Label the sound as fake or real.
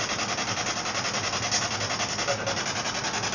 real